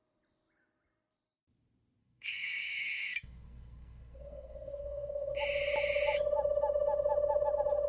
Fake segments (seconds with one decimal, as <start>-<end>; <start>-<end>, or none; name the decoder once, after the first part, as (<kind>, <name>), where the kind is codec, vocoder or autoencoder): 2.0-5.3 (codec, SNAC)